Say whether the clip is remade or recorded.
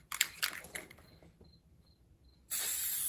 remade